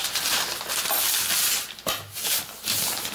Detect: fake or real real